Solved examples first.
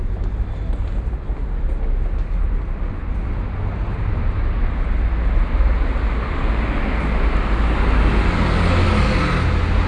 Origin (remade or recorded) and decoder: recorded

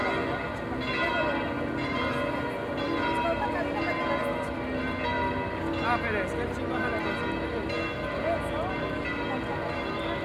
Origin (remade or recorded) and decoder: recorded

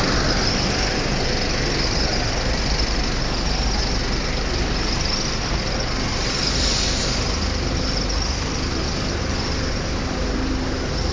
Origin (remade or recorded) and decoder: recorded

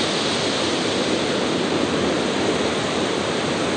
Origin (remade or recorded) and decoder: recorded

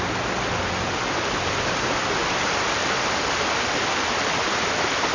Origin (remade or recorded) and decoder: recorded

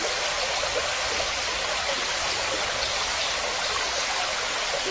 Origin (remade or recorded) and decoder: recorded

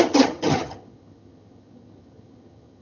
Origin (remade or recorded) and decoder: remade, vocoder, HiFi-GAN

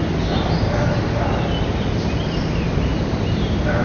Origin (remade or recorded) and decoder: recorded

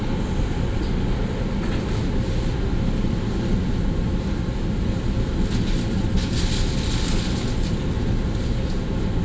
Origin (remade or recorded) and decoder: recorded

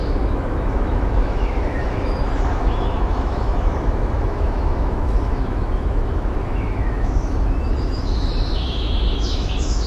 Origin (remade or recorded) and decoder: remade, autoencoder, DAC-VAE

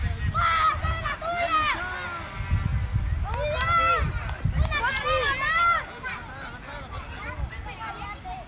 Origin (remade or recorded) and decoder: recorded